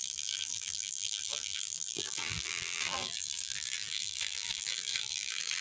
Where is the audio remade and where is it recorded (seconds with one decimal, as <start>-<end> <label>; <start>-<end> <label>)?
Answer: 0.0-5.6 remade